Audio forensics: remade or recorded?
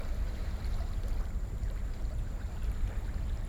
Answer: remade